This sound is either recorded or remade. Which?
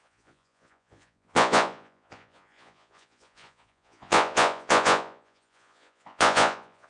remade